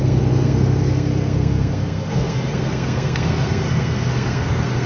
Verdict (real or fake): fake